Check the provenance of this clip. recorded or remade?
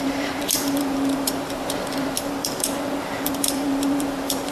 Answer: remade